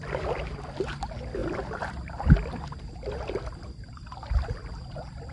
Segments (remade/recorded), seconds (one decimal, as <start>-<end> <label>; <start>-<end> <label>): 0.0-5.3 recorded